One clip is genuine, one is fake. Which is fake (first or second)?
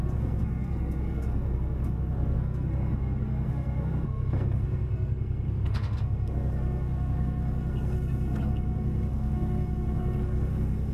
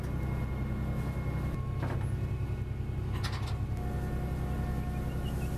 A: first